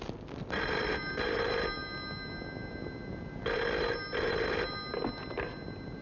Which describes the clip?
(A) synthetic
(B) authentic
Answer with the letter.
B